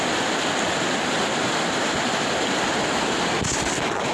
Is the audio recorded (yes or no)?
yes